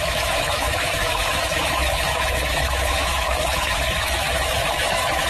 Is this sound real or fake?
fake